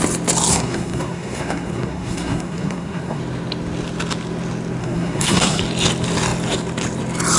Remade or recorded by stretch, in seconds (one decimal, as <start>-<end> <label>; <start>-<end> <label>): 0.0-0.5 recorded; 0.5-3.2 remade; 3.2-4.8 recorded; 4.8-5.6 remade; 5.6-7.4 recorded

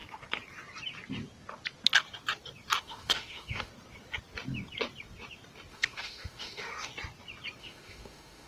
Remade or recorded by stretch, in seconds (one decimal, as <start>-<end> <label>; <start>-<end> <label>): 0.0-2.8 recorded; 2.8-3.7 remade; 3.7-5.7 recorded; 5.7-6.9 remade; 6.9-7.6 recorded; 7.6-8.5 remade